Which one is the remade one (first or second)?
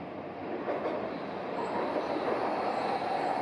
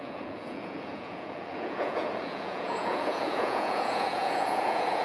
second